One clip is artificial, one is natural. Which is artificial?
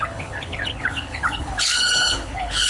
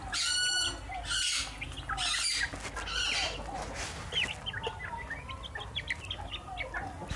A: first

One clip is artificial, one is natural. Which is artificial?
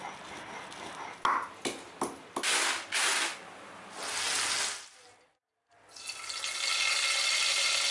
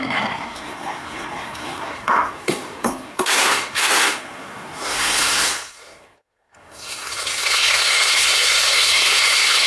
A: second